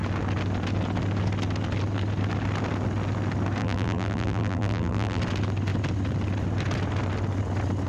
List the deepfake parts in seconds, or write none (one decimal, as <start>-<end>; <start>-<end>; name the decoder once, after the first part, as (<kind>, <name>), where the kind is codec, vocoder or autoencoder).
3.6-5.2 (vocoder, BigVGAN v2)